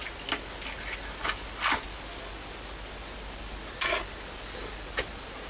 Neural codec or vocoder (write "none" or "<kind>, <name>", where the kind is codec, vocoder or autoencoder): none